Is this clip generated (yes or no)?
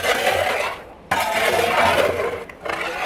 no